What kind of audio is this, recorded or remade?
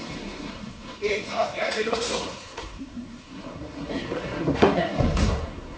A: remade